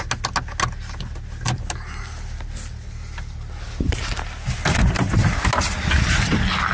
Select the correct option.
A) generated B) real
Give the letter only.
B